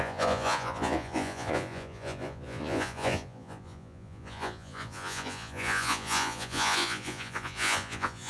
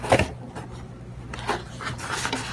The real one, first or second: second